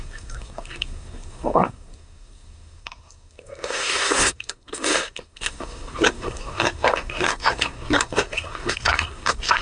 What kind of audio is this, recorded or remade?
remade